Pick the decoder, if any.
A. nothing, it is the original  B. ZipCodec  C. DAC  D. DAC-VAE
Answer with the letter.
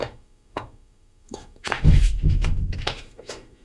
D